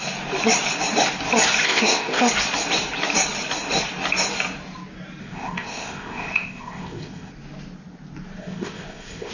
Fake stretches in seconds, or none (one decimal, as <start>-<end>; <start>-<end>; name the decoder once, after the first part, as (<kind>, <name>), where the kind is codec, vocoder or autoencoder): 1.6-2.3 (codec, ZipCodec); 5.2-7.3; 8.4-9.3